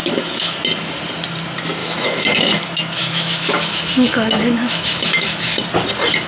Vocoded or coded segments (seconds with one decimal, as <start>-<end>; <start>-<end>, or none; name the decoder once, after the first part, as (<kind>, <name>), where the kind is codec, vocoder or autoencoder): 0.0-0.6 (autoencoder, DAC-VAE); 1.8-5.6